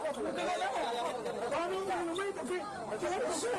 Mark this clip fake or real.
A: real